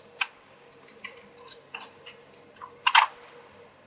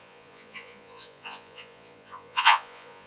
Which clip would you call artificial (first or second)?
second